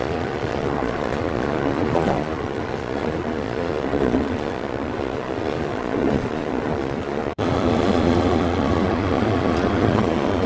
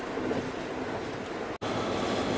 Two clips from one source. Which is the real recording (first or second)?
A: second